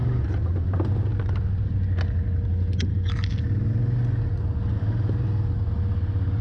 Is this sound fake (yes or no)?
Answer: no